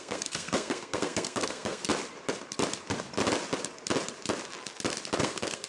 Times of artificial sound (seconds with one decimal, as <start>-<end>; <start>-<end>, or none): 0.0-1.8; 5.2-5.7